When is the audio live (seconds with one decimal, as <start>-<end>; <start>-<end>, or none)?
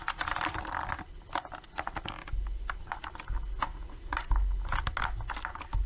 0.0-3.7; 4.3-5.9